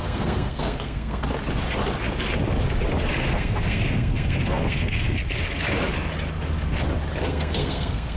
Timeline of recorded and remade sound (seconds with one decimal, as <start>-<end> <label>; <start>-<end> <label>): 0.0-1.2 remade; 1.2-3.2 recorded; 3.2-5.2 remade; 5.2-7.2 recorded; 7.2-8.2 remade